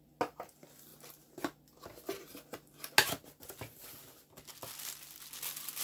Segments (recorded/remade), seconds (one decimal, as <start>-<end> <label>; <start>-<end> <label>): 0.0-5.8 recorded